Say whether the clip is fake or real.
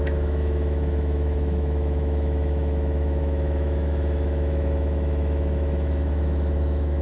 fake